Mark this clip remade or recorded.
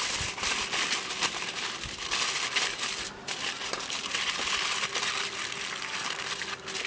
recorded